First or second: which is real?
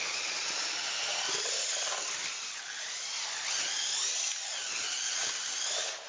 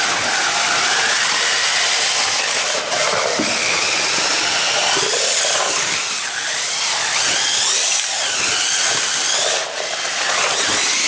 first